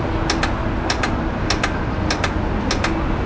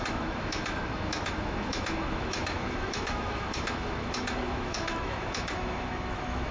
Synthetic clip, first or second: second